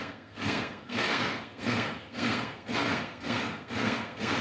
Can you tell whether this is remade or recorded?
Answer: remade